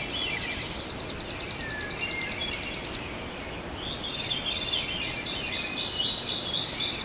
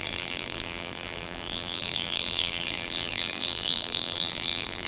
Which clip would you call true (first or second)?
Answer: first